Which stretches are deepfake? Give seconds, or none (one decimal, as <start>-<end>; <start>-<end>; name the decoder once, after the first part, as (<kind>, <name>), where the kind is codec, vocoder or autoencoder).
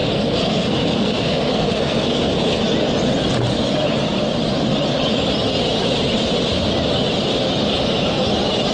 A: 0.0-2.6 (codec, SNAC)